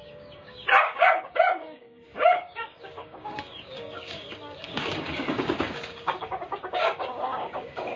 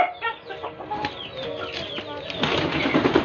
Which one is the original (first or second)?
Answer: second